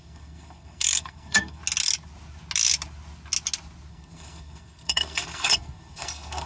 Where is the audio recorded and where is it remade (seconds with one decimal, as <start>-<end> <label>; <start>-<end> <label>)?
0.0-1.6 remade; 1.6-3.9 recorded; 3.9-6.5 remade